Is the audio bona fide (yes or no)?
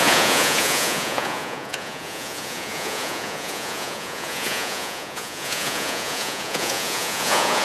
no